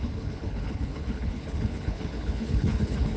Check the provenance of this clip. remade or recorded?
remade